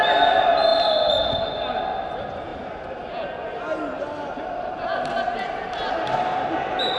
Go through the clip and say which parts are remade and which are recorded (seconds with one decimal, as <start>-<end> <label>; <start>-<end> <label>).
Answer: 0.0-7.0 recorded